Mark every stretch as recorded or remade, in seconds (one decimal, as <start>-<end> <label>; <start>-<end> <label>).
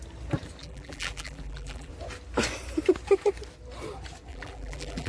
0.0-0.6 recorded; 0.6-1.9 remade; 1.9-4.3 recorded; 4.3-5.1 remade